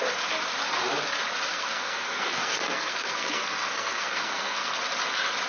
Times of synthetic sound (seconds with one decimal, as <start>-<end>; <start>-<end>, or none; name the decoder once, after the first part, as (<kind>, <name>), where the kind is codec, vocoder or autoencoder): 1.5-4.8 (codec, SNAC)